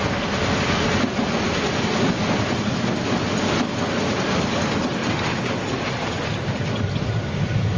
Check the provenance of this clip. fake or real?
real